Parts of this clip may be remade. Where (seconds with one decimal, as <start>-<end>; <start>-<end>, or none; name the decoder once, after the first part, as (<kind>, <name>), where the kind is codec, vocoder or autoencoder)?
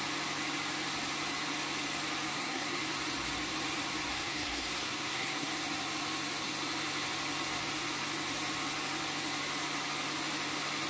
2.3-2.8 (codec, SNAC); 4.1-5.5